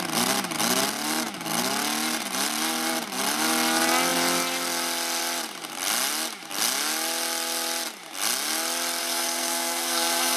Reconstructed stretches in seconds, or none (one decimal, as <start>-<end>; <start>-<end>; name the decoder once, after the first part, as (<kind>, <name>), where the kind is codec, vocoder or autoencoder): 9.0-10.4 (codec, SNAC)